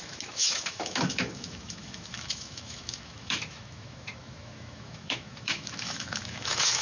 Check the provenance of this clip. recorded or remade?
remade